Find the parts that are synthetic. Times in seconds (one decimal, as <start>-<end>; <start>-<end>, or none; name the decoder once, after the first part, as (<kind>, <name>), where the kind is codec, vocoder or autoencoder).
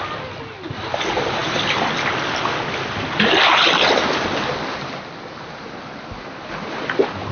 none